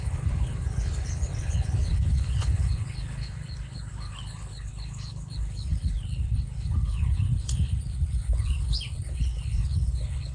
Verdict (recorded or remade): remade